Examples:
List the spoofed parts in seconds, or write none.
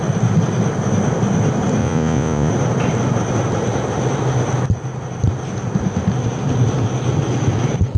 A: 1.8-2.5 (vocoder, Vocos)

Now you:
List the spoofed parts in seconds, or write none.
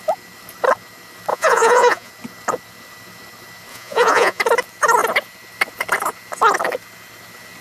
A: 1.3-2.1 (vocoder, Vocos); 3.7-4.4